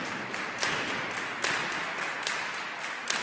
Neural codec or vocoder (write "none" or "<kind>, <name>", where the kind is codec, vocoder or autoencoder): none